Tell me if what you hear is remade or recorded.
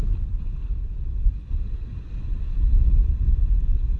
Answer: recorded